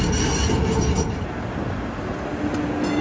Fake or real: real